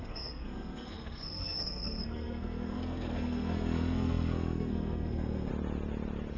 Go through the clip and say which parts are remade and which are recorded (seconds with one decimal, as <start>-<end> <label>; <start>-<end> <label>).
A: 0.0-5.5 remade; 5.5-6.4 recorded